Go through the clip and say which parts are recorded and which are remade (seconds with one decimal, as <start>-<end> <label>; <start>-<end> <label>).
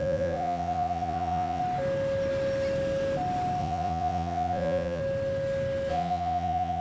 0.0-1.6 remade; 1.6-3.6 recorded; 3.6-5.0 remade; 5.0-5.9 recorded; 5.9-6.8 remade